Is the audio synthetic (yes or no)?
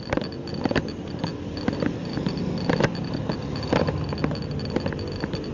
no